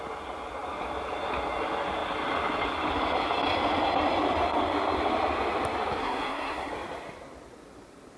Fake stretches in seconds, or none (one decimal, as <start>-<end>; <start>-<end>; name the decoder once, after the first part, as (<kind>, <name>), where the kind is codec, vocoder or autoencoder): 6.0-6.7 (codec, SNAC)